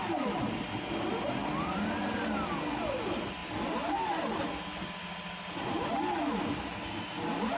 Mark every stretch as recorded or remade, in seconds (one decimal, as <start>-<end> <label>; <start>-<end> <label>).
0.0-7.6 recorded